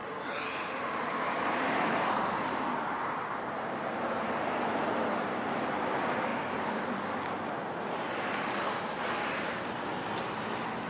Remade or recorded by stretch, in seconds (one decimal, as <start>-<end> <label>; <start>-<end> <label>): 0.0-5.1 remade; 5.1-10.9 recorded